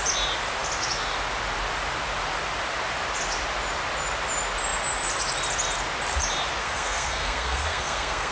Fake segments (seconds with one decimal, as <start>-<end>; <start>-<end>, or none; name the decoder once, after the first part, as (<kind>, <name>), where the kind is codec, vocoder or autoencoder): 6.6-8.3 (codec, SNAC)